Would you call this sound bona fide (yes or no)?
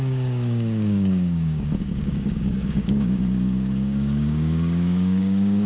no